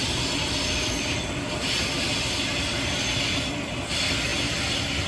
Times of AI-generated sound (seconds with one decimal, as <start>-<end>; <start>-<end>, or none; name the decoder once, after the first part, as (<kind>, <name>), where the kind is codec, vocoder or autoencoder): none